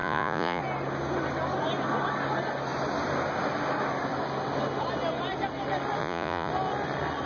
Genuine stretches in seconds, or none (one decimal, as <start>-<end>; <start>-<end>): 0.6-6.0; 6.5-7.3